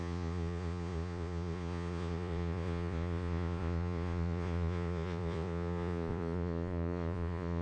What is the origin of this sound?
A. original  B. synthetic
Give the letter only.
B